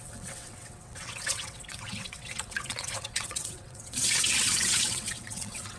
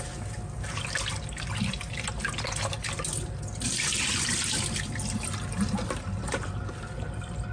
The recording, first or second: second